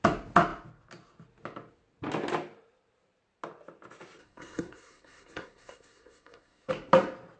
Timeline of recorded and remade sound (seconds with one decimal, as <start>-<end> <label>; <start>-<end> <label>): 0.0-4.2 recorded; 4.2-6.7 remade; 6.7-7.4 recorded